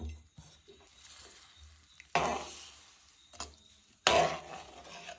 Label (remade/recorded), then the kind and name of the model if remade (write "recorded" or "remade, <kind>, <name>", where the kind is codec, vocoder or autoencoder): recorded